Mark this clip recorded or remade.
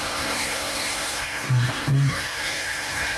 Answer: remade